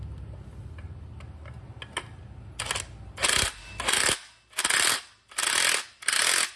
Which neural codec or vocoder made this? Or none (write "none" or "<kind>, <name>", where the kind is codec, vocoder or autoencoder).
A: none